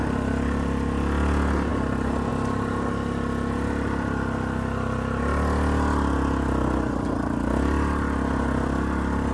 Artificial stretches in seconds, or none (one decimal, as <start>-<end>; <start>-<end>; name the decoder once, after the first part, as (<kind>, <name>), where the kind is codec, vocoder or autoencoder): none

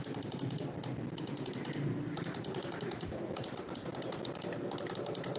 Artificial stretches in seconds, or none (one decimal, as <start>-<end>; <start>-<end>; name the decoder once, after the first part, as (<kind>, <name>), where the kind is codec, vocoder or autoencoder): none

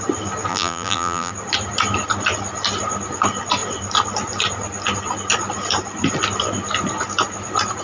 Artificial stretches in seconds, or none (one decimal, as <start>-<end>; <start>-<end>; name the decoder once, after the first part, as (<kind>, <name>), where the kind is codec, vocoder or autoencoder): 0.5-1.3 (vocoder, BigVGAN v2)